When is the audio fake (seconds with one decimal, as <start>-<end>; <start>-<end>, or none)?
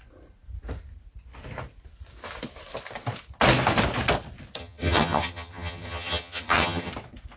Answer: 4.6-6.9